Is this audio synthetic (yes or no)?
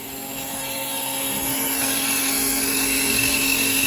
yes